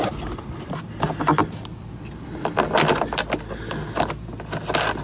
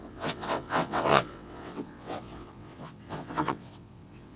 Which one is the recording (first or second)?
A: first